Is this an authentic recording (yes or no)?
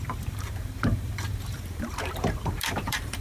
no